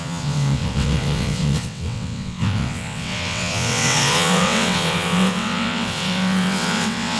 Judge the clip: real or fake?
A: fake